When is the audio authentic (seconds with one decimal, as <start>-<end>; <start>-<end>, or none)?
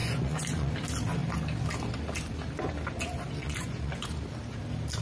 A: 0.7-3.4; 4.1-5.0